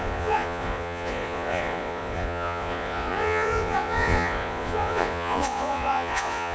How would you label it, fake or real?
fake